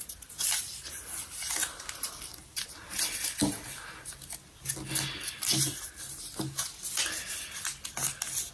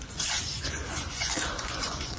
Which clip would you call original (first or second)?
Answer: first